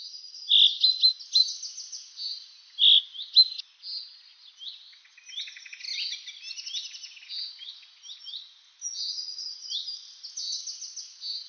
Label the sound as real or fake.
real